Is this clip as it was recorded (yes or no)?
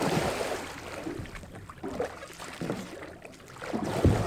yes